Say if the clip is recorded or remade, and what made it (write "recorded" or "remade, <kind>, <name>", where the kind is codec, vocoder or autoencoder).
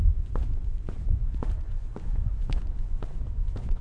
remade, vocoder, Vocos